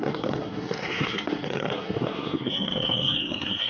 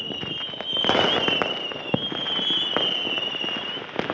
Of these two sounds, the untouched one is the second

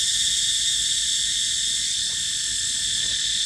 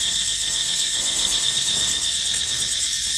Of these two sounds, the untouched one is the first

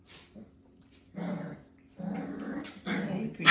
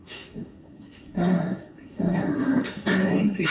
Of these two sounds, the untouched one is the first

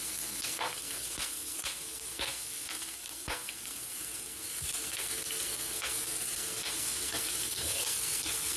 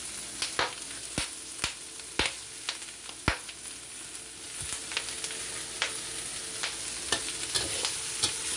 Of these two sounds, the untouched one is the second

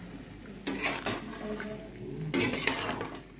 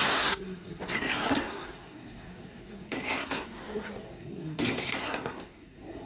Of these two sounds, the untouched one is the first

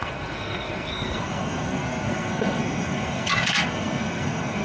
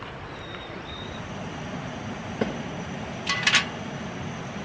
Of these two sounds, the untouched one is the second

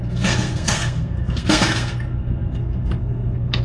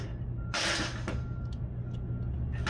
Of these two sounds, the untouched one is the second